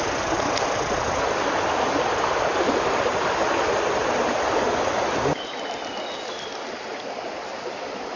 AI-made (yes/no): no